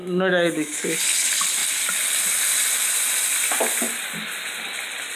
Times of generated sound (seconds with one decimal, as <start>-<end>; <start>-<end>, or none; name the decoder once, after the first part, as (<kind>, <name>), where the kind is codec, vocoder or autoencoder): 0.0-1.0 (autoencoder, DAC-VAE)